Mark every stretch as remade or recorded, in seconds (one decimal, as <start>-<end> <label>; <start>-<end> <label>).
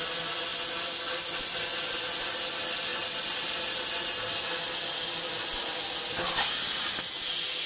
0.0-7.7 recorded